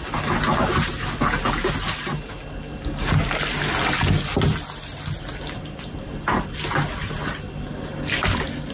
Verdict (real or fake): real